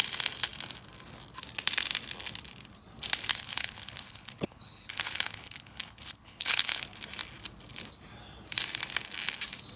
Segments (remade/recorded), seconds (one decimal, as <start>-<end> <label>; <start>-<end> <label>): 0.0-3.3 recorded; 3.3-6.8 remade; 6.8-9.8 recorded